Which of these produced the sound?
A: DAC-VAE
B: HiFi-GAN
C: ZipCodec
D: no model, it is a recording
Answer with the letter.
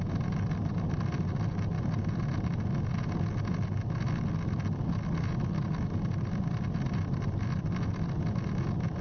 D